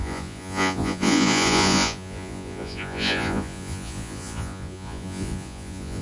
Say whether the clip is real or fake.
fake